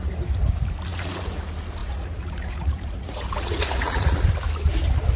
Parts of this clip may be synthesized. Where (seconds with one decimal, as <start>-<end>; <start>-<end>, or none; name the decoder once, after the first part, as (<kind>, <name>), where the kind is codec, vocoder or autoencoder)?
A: 0.9-1.4 (vocoder, Vocos); 1.8-4.3